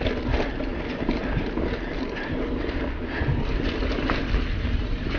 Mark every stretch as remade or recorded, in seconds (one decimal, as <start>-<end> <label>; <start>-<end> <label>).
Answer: 0.0-5.2 recorded